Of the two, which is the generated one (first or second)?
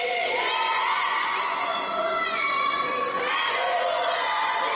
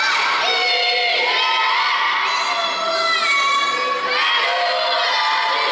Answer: first